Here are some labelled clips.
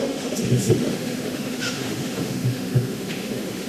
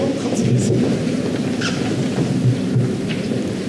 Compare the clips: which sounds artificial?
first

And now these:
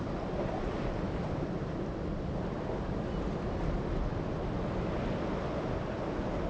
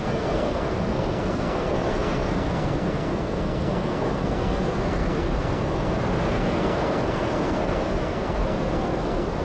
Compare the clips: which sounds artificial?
second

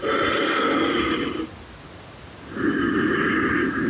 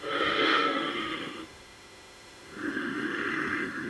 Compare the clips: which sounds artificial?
second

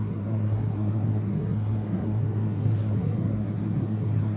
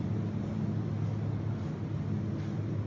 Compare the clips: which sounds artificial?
first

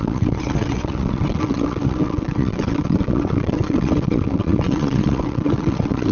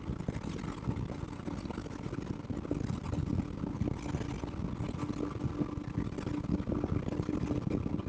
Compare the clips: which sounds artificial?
first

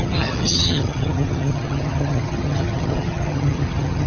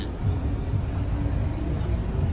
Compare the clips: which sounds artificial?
first